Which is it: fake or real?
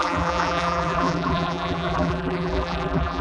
fake